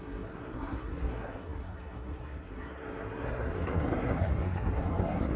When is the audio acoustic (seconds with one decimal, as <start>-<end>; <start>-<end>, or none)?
none